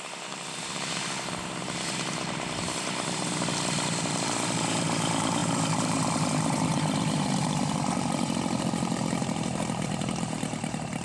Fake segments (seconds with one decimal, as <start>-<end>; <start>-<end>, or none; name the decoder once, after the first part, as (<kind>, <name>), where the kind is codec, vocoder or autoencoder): 0.0-11.0 (vocoder, BigVGAN v2)